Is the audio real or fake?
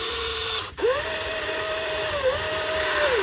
fake